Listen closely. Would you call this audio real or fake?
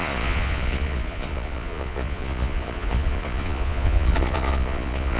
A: fake